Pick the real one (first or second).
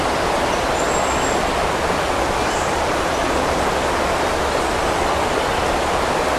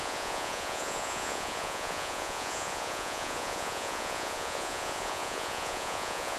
first